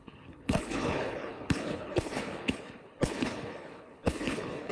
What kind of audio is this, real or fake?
fake